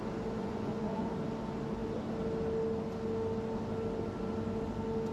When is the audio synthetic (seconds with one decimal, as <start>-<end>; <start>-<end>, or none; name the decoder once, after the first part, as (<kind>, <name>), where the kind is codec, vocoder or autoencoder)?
0.4-1.1 (vocoder, Vocos)